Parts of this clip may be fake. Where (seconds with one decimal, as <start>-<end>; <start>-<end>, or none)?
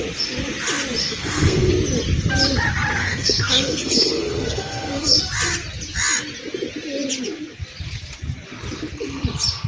1.0-1.7; 3.0-5.2